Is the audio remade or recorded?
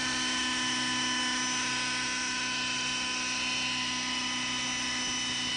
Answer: recorded